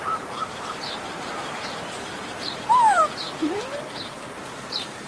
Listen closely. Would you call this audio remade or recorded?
remade